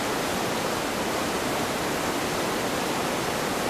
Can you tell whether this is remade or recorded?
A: recorded